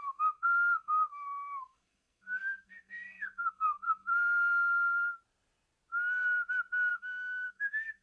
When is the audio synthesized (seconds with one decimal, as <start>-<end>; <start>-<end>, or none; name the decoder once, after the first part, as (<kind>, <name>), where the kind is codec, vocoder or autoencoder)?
0.0-4.1 (codec, SNAC); 6.9-8.0